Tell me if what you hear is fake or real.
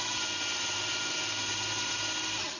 real